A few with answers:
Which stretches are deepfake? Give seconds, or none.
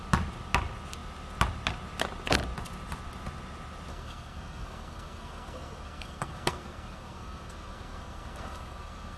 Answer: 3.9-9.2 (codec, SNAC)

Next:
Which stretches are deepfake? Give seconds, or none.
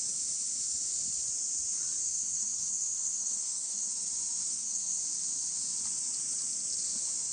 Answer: 2.0-3.9 (codec, SNAC); 4.5-5.0